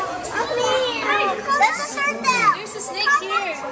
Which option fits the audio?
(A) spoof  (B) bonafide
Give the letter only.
B